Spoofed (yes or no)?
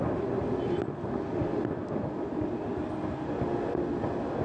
no